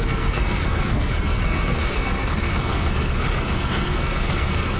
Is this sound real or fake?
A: fake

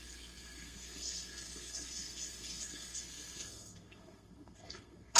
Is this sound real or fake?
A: fake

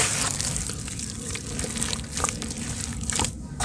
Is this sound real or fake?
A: real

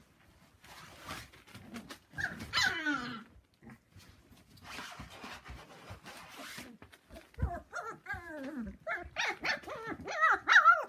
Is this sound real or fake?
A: real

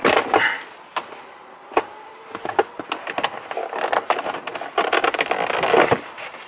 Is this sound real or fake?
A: real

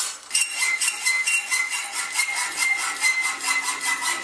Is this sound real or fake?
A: real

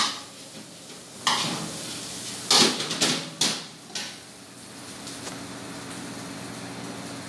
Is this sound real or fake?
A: real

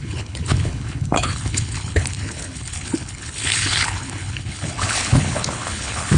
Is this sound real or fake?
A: fake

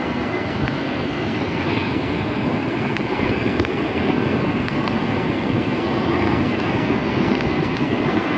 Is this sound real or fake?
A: fake